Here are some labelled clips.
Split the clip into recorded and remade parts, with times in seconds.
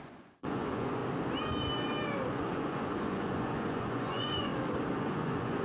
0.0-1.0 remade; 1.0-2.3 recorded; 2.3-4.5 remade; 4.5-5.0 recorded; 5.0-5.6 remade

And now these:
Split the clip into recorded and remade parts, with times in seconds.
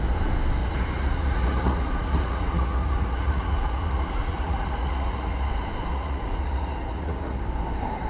0.0-0.6 recorded; 0.6-5.5 remade; 5.5-5.9 recorded; 5.9-7.4 remade; 7.4-8.1 recorded